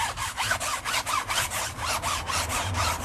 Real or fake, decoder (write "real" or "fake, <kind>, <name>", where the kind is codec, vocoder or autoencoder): fake, vocoder, BigVGAN v2